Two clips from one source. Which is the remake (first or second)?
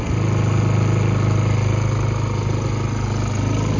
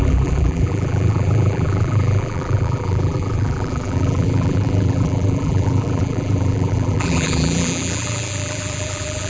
second